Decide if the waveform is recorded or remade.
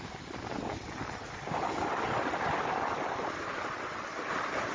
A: recorded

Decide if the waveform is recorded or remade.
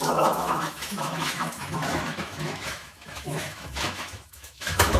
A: remade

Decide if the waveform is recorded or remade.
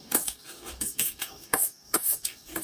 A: remade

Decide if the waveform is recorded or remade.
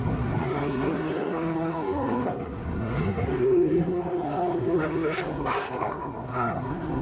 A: remade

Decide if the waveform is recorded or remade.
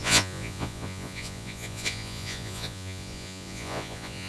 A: remade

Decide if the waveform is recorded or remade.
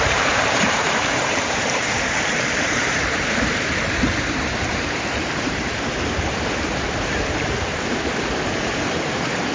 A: remade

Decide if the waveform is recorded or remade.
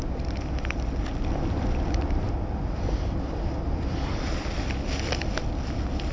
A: recorded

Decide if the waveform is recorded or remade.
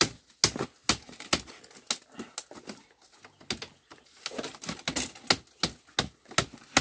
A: recorded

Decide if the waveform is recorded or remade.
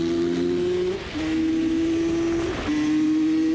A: recorded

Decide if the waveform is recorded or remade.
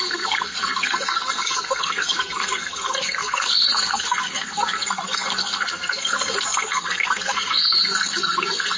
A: remade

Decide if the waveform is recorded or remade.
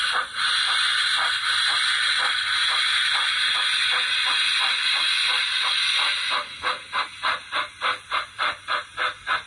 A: recorded